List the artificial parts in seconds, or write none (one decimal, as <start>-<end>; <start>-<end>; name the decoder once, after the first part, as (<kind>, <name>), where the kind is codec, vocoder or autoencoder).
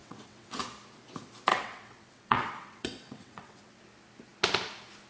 0.0-0.6 (vocoder, WaveNeXt); 1.5-3.8